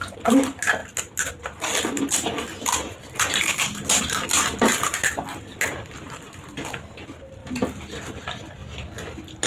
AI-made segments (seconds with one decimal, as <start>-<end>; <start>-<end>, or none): none